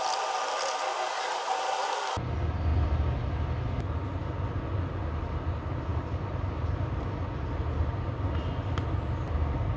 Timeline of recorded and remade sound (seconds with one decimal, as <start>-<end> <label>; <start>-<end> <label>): 0.0-9.8 recorded